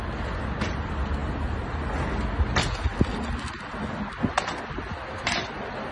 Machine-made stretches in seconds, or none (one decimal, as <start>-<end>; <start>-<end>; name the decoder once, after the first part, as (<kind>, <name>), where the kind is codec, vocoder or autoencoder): none